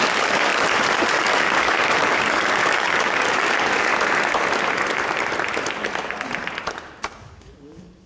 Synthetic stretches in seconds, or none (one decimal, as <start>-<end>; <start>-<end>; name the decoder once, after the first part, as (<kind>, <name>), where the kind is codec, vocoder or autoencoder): 0.0-3.9 (codec, DAC); 7.2-8.1